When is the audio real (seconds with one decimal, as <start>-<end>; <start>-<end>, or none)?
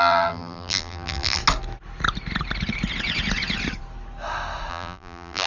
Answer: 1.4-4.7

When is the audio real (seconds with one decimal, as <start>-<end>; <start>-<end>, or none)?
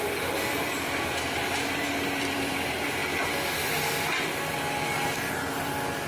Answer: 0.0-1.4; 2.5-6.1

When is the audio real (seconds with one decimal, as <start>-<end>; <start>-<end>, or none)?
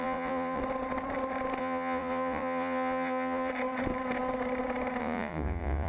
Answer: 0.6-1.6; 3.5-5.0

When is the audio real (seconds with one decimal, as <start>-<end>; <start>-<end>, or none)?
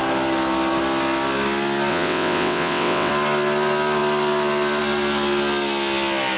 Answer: 0.0-1.9; 3.1-6.4